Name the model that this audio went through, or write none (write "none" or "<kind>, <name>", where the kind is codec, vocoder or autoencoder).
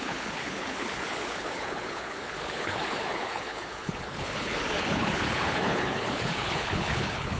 codec, HILCodec